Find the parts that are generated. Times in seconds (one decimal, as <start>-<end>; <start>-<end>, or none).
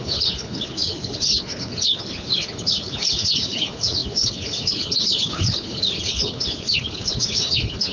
0.0-7.9